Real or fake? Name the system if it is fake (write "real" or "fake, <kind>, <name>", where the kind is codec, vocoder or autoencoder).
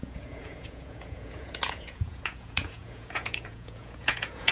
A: fake, vocoder, Vocos